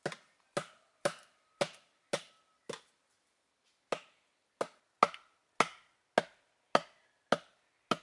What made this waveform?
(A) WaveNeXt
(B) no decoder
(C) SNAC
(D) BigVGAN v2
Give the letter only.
B